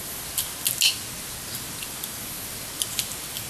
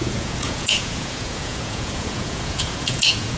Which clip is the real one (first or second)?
first